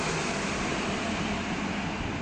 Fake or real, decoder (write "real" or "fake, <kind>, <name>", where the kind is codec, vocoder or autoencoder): real